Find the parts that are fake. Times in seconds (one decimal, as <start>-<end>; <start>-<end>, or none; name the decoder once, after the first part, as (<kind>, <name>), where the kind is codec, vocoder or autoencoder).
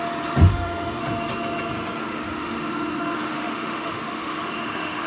0.5-1.0 (autoencoder, DAC-VAE); 2.0-5.1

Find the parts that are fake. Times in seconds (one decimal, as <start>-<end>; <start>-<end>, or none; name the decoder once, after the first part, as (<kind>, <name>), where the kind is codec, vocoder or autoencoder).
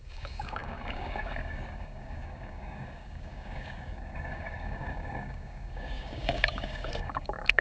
0.0-7.6 (codec, DAC)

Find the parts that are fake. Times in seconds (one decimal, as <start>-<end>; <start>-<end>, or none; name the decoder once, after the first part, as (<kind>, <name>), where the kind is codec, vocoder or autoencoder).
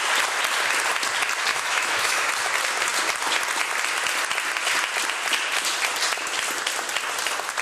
1.5-2.3 (autoencoder, DAC-VAE)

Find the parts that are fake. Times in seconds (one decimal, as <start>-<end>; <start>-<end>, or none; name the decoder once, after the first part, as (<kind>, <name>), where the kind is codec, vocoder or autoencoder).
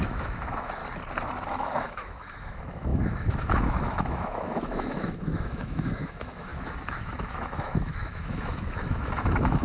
0.0-0.8 (autoencoder, DAC-VAE); 1.5-9.6